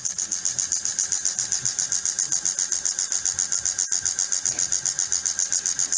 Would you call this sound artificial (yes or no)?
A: no